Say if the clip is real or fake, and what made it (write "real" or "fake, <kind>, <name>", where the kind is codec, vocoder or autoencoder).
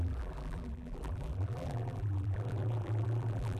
fake, vocoder, BigVGAN v2